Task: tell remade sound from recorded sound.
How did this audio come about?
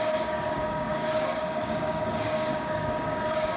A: remade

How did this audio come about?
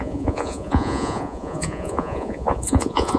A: remade